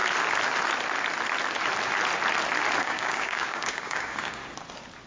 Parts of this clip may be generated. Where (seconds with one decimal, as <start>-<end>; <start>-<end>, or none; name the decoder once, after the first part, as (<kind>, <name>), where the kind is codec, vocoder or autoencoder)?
2.8-4.4 (codec, DAC)